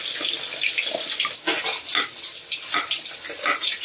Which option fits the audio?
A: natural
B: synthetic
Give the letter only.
A